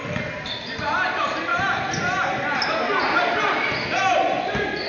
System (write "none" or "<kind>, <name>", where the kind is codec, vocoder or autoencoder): none